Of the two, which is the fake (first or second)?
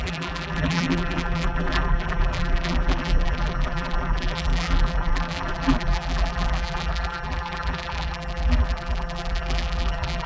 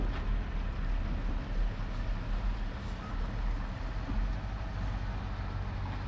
first